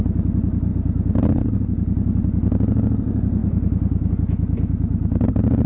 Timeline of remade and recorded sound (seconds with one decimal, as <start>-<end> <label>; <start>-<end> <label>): 0.0-3.4 recorded; 3.4-4.1 remade; 4.1-5.7 recorded